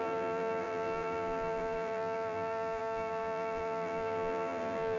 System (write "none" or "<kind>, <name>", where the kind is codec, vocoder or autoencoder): vocoder, BigVGAN v2